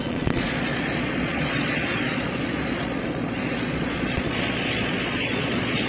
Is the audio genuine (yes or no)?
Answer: no